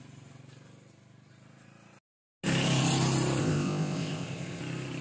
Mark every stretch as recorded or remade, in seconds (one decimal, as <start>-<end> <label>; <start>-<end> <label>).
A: 0.0-3.4 recorded; 3.4-4.6 remade; 4.6-5.0 recorded